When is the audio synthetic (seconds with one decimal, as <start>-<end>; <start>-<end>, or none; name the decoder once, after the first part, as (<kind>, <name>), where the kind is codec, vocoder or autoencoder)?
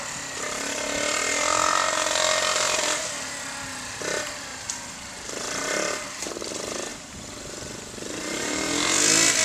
2.5-3.1 (vocoder, BigVGAN v2); 4.5-5.6; 6.9-7.9